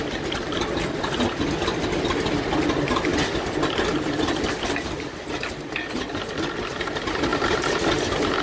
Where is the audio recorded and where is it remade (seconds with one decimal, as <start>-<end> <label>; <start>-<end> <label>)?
0.0-8.4 recorded